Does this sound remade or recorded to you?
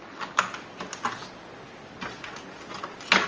recorded